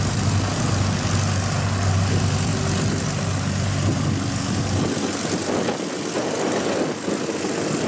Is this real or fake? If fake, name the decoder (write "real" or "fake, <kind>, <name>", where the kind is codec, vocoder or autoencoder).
real